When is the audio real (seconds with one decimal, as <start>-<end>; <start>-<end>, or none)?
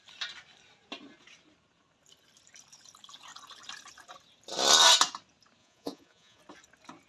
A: 0.0-5.6; 6.4-7.1